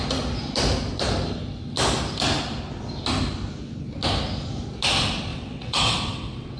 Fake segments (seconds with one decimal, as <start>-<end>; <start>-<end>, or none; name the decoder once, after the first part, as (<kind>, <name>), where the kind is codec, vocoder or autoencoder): 5.3-6.6 (vocoder, WaveNeXt)